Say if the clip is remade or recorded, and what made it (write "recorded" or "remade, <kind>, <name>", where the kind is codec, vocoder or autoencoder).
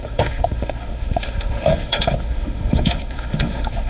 remade, autoencoder, DAC-VAE